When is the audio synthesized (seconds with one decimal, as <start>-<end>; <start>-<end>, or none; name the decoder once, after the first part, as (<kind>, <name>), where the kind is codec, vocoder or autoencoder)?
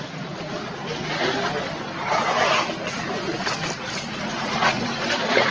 0.0-0.8 (vocoder, Vocos); 4.1-5.5